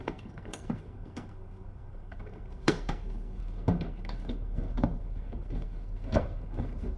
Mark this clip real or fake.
fake